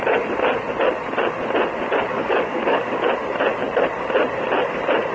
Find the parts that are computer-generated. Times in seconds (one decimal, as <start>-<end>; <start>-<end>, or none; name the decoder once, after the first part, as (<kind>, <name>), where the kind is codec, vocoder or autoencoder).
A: 2.1-3.0 (codec, DAC)